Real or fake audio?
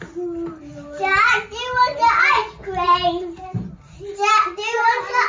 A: real